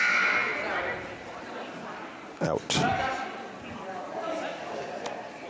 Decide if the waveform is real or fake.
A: real